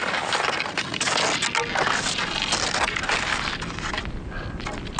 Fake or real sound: real